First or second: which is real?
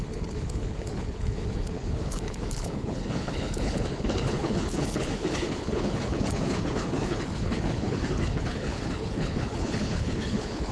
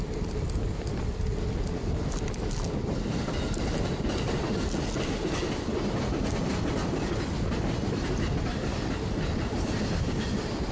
second